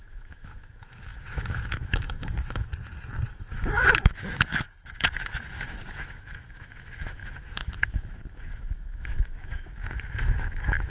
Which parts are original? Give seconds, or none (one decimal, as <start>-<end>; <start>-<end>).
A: 2.7-3.3